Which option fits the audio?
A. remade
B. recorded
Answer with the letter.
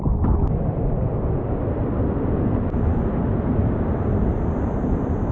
B